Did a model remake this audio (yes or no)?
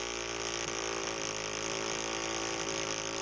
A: no